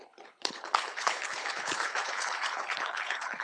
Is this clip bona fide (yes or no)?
no